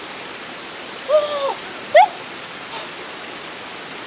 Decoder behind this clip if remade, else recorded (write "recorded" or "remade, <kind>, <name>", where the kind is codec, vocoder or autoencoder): recorded